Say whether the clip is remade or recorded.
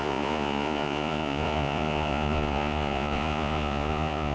remade